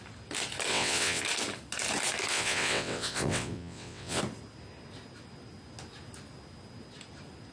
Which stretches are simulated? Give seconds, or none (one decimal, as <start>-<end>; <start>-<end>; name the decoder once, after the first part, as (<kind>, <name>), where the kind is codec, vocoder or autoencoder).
0.7-1.2 (vocoder, WaveNeXt); 2.3-4.2